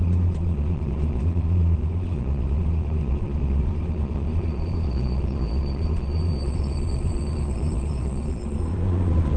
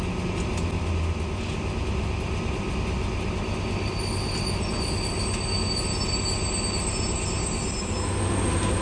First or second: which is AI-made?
first